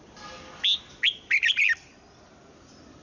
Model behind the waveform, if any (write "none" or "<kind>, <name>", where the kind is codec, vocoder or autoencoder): none